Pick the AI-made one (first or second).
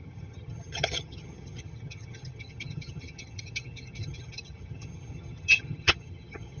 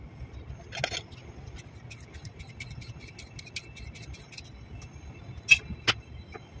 first